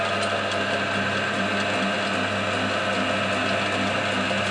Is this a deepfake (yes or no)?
no